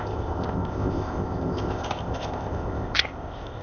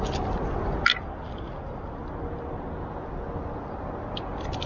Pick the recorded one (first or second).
second